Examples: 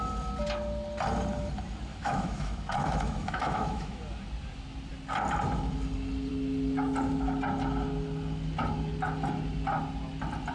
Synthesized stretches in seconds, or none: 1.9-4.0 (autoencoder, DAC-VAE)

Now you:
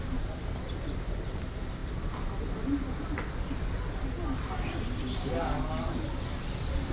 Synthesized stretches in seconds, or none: none

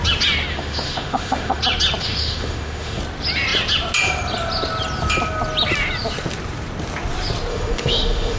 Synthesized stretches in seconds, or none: 0.5-1.6 (autoencoder, DAC-VAE); 2.0-3.0; 7.5-8.4

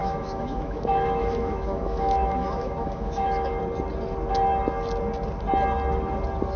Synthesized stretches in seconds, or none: 0.0-3.6 (autoencoder, DAC-VAE)

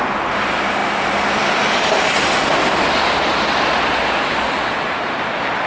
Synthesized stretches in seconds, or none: none